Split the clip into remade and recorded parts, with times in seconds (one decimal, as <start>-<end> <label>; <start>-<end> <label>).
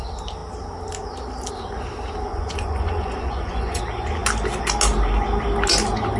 0.0-2.3 recorded; 2.3-3.8 remade; 3.8-6.2 recorded